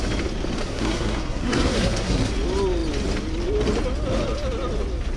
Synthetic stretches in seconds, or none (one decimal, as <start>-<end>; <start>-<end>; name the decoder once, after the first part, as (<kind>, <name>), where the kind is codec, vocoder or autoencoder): 0.6-2.3 (codec, SNAC)